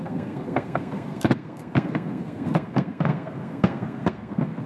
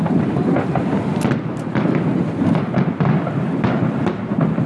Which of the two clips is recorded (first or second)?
second